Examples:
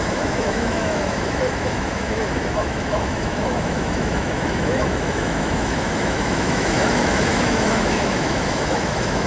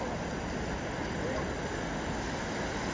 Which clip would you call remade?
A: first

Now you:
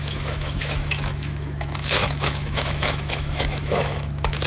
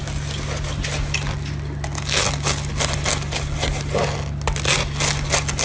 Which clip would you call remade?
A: first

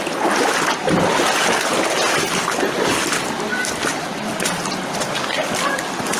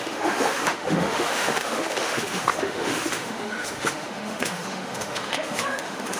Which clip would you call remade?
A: second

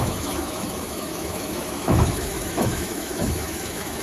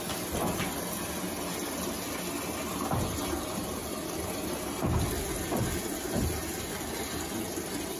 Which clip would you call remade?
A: first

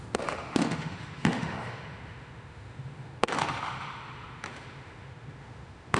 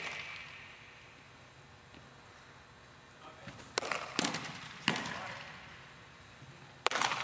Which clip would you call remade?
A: first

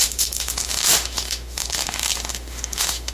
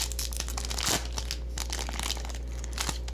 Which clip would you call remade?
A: first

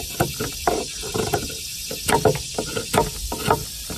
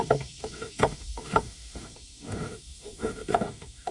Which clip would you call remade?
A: second